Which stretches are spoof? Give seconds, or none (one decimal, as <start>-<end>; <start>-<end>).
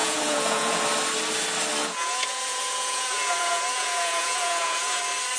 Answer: 0.0-0.8; 1.8-5.0